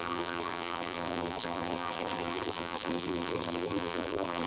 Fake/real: fake